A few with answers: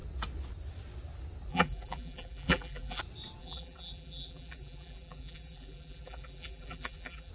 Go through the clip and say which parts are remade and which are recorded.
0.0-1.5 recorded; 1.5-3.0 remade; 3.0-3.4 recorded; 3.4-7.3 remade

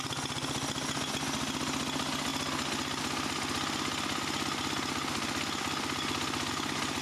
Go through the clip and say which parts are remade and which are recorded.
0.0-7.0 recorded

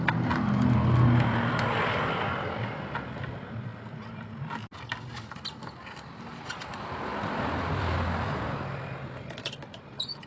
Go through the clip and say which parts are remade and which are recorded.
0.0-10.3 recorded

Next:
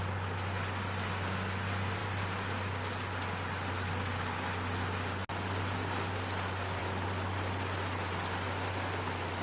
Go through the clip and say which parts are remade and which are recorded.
0.0-9.4 recorded

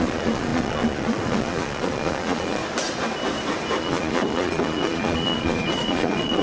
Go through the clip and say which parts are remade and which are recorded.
0.0-2.6 remade; 2.6-3.8 recorded; 3.8-6.4 remade

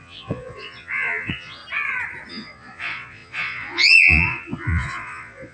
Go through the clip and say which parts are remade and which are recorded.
0.0-1.6 remade; 1.6-2.3 recorded; 2.3-5.5 remade

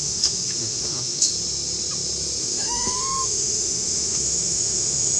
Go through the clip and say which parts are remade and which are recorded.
0.0-1.3 remade; 1.3-2.4 recorded; 2.4-5.2 remade

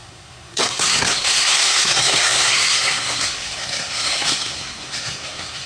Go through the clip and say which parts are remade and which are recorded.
0.0-5.7 remade